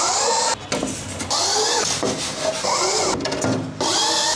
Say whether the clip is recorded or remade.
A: recorded